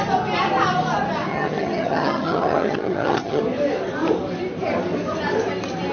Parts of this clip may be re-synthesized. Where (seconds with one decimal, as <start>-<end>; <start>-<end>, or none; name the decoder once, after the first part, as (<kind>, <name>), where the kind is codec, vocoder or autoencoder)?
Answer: 1.3-3.4 (vocoder, HiFi-GAN)